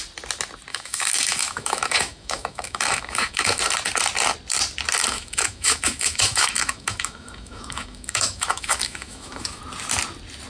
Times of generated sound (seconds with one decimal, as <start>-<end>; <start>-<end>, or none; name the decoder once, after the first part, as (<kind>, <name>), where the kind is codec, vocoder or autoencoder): 0.7-3.6 (autoencoder, DAC-VAE); 5.0-9.6